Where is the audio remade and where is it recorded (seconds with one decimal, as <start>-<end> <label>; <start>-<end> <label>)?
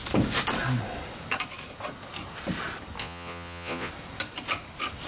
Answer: 0.0-3.0 recorded; 3.0-3.9 remade; 3.9-5.1 recorded